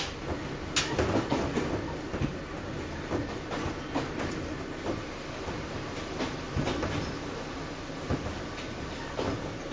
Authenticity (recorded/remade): recorded